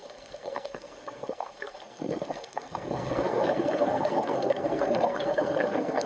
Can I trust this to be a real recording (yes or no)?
no